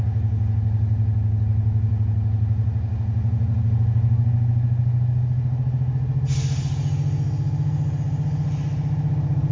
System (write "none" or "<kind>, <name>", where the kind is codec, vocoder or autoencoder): none